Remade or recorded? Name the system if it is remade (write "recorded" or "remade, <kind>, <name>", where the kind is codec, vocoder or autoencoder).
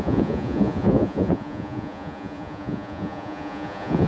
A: remade, vocoder, Vocos